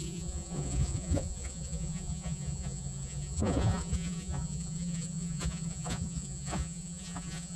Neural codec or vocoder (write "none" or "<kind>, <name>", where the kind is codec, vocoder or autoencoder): vocoder, Vocos